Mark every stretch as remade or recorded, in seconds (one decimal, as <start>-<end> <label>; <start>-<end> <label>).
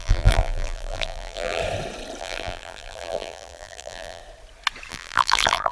0.0-1.6 remade; 1.6-2.2 recorded; 2.2-4.2 remade; 4.2-4.9 recorded; 4.9-5.7 remade